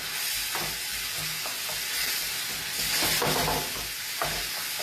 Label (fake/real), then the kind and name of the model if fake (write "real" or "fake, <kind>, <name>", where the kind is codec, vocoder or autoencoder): real